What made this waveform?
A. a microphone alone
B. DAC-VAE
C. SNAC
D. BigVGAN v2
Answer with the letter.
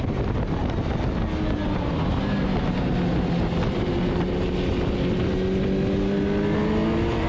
A